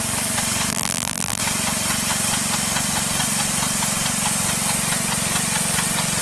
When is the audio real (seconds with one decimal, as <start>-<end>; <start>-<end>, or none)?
0.0-0.7; 1.4-6.2

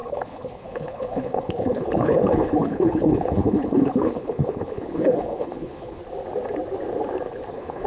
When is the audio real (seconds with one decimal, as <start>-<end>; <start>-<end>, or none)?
6.0-7.5

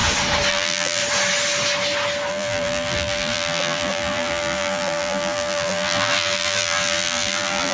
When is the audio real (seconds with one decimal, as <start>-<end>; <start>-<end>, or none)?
0.0-0.5; 1.0-2.3

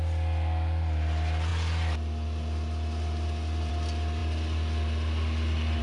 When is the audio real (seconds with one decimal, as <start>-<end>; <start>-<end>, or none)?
0.0-5.8

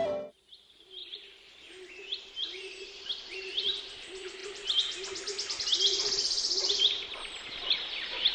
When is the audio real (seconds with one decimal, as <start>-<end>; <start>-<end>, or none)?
4.4-6.7

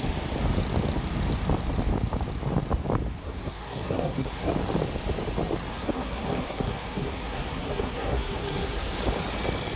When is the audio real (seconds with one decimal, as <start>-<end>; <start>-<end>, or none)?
0.0-3.2; 4.5-5.7; 9.0-9.8